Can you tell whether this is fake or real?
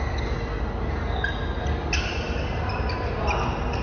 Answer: real